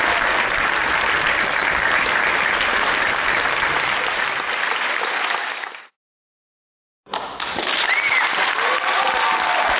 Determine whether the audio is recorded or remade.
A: recorded